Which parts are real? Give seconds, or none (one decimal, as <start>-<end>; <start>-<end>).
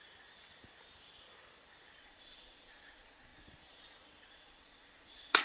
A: 0.0-2.0